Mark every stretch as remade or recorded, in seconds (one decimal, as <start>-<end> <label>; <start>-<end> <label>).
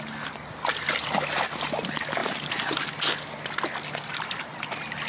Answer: 0.0-0.7 recorded; 0.7-1.3 remade; 1.3-2.2 recorded; 2.2-3.1 remade; 3.1-5.1 recorded